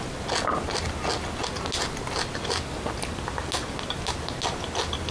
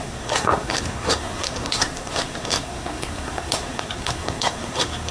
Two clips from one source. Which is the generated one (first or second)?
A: second